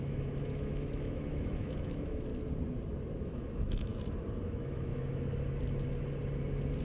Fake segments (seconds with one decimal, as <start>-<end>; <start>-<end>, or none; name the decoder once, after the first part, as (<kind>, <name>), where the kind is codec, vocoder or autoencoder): 0.0-2.3 (autoencoder, DAC-VAE); 3.2-3.9; 4.4-4.9